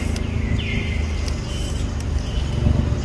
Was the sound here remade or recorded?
recorded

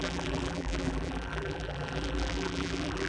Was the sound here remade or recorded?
remade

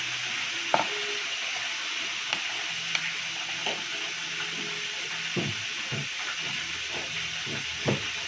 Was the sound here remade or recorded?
recorded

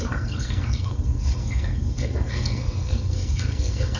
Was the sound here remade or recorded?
remade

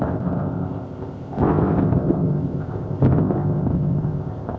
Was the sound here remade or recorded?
remade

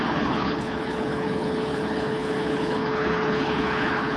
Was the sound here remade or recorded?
remade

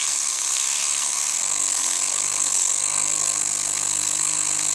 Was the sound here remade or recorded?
remade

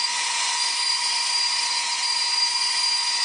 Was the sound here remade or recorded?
remade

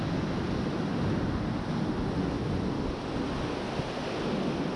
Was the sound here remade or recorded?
recorded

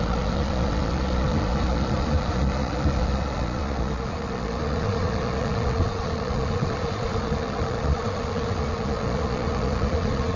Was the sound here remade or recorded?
remade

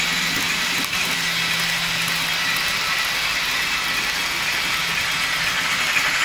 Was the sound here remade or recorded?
recorded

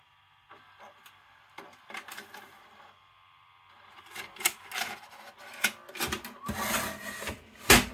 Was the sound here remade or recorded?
recorded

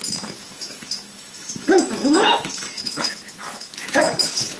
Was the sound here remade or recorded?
remade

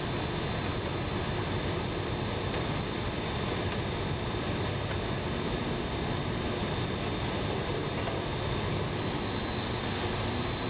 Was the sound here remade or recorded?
recorded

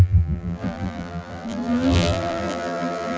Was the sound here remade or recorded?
remade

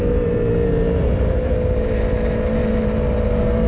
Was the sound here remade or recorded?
remade